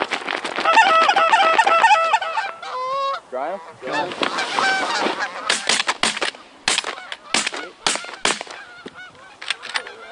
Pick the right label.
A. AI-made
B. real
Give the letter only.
B